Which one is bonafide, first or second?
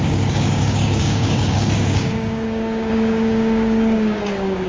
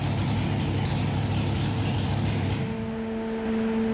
second